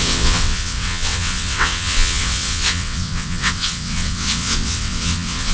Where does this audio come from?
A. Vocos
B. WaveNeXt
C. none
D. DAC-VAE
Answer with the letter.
B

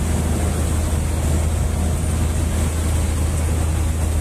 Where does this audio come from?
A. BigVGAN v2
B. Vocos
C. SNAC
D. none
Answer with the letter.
D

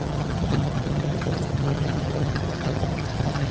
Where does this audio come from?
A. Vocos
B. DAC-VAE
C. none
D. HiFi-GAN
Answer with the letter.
D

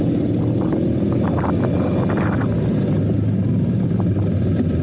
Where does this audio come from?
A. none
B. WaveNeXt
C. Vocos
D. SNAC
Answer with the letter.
A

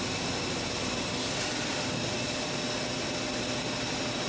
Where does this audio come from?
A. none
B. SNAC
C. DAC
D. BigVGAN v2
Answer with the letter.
A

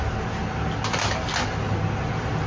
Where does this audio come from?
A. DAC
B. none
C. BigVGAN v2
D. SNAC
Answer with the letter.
B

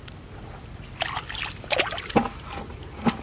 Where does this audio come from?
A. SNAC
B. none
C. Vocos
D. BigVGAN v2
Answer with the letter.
B